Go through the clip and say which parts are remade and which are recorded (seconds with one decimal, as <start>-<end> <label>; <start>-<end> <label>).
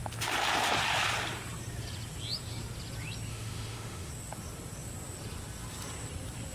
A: 0.0-3.3 recorded; 3.3-4.1 remade; 4.1-6.5 recorded